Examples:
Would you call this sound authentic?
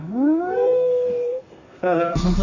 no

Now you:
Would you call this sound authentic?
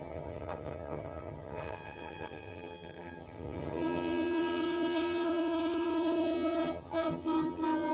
no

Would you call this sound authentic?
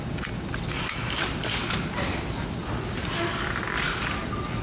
yes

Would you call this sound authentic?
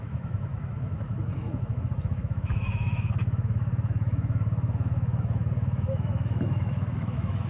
no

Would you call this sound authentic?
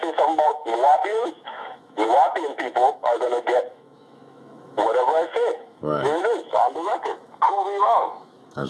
no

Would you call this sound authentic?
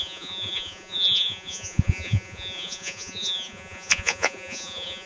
no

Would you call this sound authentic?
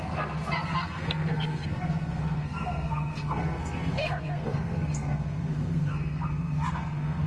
no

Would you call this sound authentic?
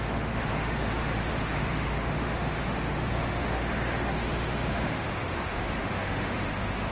no